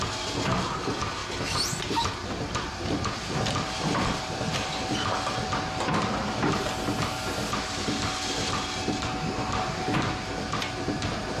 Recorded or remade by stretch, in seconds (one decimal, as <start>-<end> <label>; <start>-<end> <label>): 0.0-1.2 recorded; 1.2-5.3 remade; 5.3-11.4 recorded